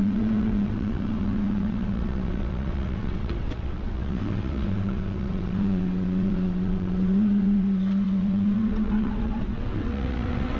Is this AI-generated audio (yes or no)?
yes